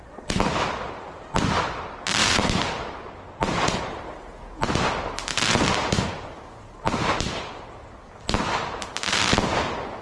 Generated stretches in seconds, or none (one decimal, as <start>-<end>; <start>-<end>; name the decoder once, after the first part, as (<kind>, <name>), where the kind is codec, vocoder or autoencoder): 2.2-4.4 (vocoder, BigVGAN v2)